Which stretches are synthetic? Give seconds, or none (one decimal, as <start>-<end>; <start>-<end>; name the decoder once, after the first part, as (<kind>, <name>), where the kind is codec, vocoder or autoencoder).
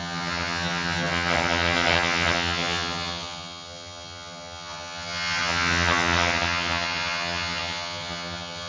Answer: 0.0-8.7 (vocoder, HiFi-GAN)